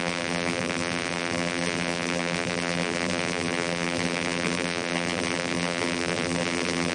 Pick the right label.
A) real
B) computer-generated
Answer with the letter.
B